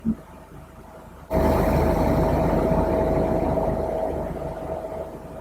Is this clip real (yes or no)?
yes